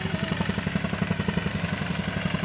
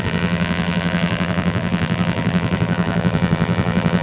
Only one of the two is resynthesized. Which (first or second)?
second